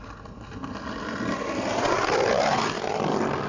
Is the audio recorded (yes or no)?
yes